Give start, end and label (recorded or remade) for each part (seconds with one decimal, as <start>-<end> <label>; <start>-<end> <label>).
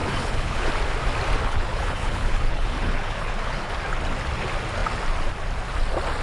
0.0-0.7 remade; 0.7-1.4 recorded; 1.4-3.7 remade; 3.7-6.2 recorded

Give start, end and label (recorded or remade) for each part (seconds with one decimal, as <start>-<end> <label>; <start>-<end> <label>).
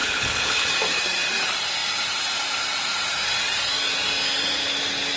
0.0-0.7 remade; 0.7-5.2 recorded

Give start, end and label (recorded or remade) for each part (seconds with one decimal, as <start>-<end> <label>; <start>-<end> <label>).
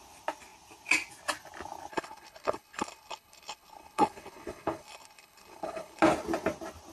0.0-1.9 recorded; 1.9-6.0 remade; 6.0-6.9 recorded